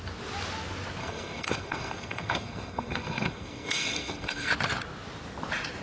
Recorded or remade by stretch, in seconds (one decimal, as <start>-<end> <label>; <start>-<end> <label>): 0.0-1.0 recorded; 1.0-4.5 remade; 4.5-5.8 recorded